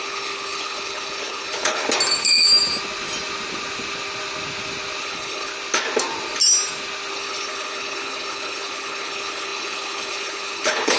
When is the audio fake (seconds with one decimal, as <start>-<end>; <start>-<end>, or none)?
0.0-1.8; 5.0-5.5; 7.1-11.0